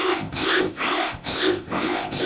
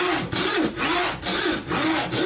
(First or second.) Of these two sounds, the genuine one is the second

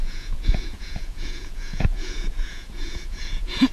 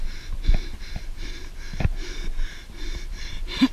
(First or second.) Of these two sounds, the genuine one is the second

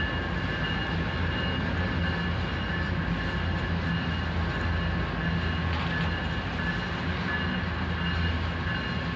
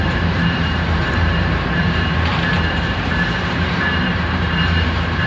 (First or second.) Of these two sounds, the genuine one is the first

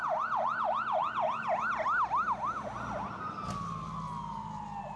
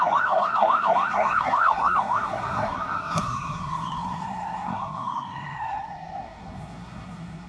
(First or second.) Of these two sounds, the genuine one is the first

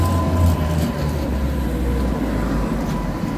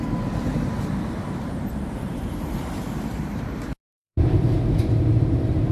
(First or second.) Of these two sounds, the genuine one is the first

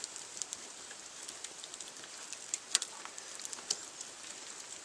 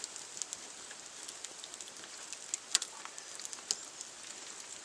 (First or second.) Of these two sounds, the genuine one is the second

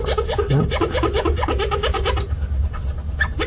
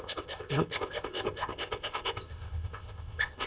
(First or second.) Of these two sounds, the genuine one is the first